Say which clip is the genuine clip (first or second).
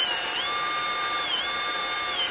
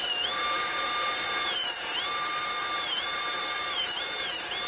first